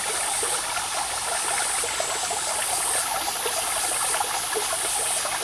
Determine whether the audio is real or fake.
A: real